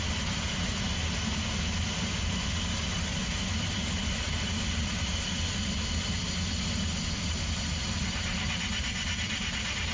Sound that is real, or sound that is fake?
real